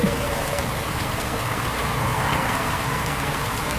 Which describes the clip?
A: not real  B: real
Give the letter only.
A